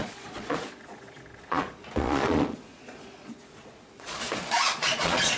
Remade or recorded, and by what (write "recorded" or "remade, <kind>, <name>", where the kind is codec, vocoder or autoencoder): remade, vocoder, Vocos